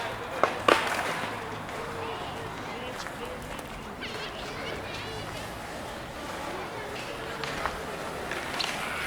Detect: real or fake real